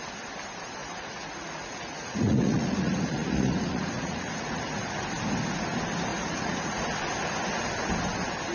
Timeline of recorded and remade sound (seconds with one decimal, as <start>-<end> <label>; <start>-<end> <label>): 0.0-0.8 recorded; 0.8-5.1 remade; 5.1-6.1 recorded; 6.1-6.8 remade; 6.8-8.5 recorded

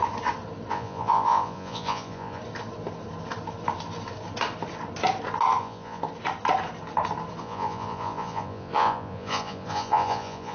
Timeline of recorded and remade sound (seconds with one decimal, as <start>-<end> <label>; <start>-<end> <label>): 0.0-0.7 recorded; 0.7-2.4 remade; 2.4-5.6 recorded; 5.6-6.0 remade; 6.0-7.4 recorded; 7.4-10.5 remade

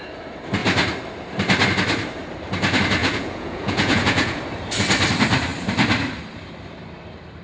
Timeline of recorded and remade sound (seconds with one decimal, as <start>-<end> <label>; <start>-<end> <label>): 0.0-3.0 recorded; 3.0-4.4 remade; 4.4-7.4 recorded

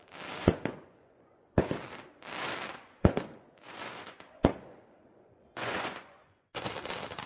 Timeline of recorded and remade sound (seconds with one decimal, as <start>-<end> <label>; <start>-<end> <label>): 0.0-0.4 recorded; 0.4-1.7 remade; 1.7-2.7 recorded; 2.7-6.7 remade; 6.7-7.3 recorded

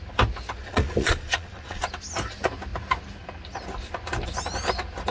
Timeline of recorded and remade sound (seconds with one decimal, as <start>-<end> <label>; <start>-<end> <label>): 0.0-0.6 recorded; 0.6-1.8 remade; 1.8-5.1 recorded

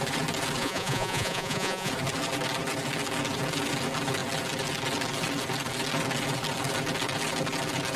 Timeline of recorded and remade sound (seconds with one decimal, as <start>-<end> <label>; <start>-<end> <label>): 0.0-0.6 recorded; 0.6-1.9 remade; 1.9-8.0 recorded

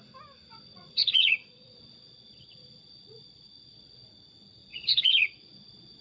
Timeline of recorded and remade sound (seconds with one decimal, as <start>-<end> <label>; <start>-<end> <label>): 0.0-0.5 recorded; 0.5-4.1 remade; 4.1-4.7 recorded; 4.7-6.0 remade